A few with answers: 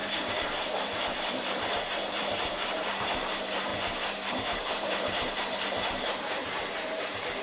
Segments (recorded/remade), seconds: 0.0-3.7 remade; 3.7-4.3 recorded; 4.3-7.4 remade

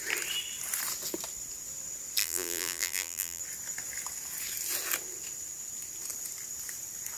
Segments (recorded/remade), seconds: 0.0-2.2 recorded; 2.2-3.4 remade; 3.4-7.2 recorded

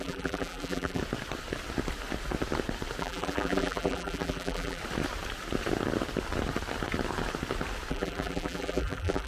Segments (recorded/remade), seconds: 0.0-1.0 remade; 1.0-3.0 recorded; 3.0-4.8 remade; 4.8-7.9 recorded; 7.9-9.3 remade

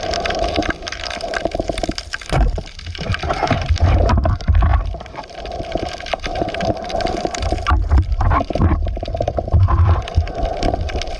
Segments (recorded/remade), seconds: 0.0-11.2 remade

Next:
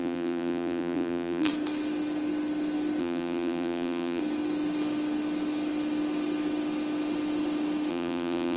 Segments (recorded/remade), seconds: 0.0-1.5 remade; 1.5-3.0 recorded; 3.0-4.2 remade; 4.2-7.9 recorded; 7.9-8.6 remade

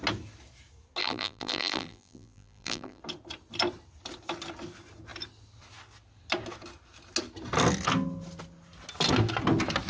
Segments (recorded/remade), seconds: 0.0-1.0 recorded; 1.0-3.0 remade; 3.0-9.9 recorded

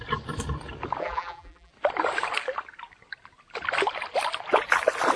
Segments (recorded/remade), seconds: 0.0-1.0 recorded; 1.0-1.7 remade; 1.7-5.2 recorded

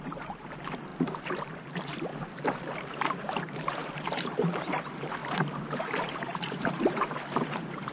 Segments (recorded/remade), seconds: 0.0-7.9 remade